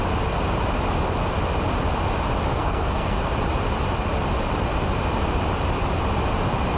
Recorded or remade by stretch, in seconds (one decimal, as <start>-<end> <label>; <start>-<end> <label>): 0.0-2.5 recorded; 2.5-3.3 remade; 3.3-6.8 recorded